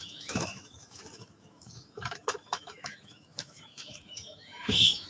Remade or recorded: remade